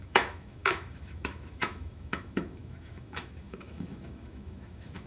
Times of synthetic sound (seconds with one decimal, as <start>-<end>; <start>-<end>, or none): 0.0-5.1